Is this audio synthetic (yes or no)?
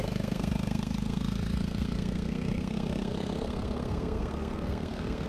yes